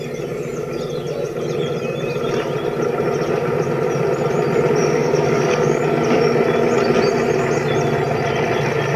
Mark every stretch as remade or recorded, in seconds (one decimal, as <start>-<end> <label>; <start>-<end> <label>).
0.0-4.8 recorded; 4.8-5.8 remade; 5.8-9.0 recorded